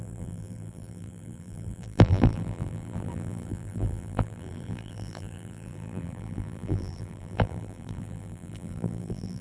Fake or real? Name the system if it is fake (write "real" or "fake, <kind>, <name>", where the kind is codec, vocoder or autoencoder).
fake, vocoder, BigVGAN v2